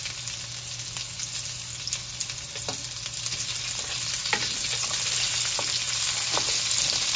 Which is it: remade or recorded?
recorded